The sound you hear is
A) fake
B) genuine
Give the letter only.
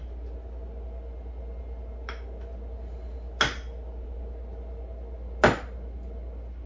B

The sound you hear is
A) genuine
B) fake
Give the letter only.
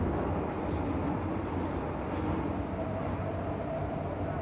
A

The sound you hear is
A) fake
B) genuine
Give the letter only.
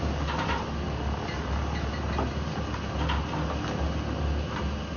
B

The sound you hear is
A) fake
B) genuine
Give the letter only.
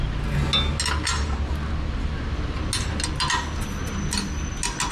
B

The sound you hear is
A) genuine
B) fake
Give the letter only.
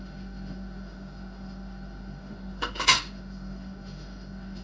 B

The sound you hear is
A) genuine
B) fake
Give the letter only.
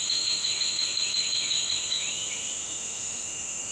B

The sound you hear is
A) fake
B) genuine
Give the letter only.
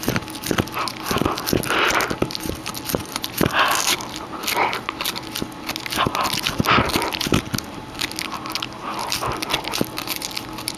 B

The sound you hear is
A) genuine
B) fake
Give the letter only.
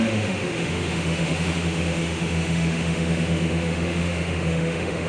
B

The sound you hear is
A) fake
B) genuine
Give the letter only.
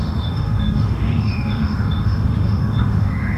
A